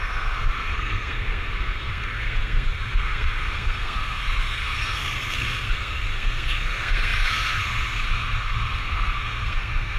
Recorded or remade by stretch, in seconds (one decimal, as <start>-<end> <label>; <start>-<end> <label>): 0.0-10.0 remade